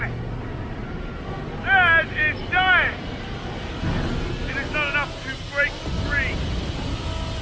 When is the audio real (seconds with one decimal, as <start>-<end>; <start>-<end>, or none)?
0.0-7.4

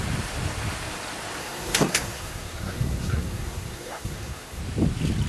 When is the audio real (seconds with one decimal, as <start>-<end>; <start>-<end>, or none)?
0.0-1.4; 4.6-5.3